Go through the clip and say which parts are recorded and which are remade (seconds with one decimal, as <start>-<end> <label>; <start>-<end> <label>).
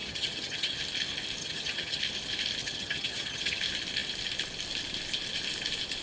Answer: 0.0-0.8 remade; 0.8-1.4 recorded; 1.4-2.0 remade; 2.0-2.6 recorded; 2.6-3.6 remade; 3.6-6.0 recorded